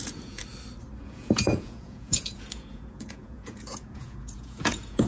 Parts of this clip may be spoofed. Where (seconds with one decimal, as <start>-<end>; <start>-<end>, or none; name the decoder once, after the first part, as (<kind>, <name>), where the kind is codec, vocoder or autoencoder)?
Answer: 0.0-0.4 (vocoder, Vocos); 1.0-5.1